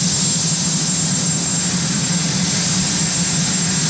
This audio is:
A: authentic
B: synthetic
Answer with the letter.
A